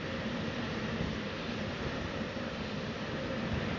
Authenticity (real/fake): fake